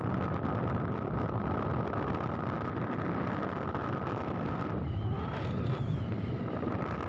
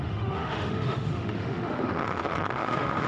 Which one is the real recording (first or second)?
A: first